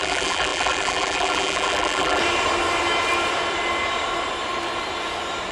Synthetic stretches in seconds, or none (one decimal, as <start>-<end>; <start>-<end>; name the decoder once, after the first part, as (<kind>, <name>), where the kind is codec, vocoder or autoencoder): 0.0-2.2 (vocoder, BigVGAN v2)